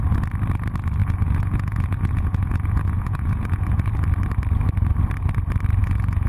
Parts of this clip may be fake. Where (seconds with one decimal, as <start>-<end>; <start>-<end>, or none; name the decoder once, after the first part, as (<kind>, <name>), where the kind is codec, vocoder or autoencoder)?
1.0-3.9 (vocoder, Vocos); 5.8-6.3